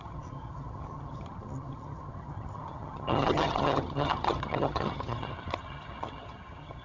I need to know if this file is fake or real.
fake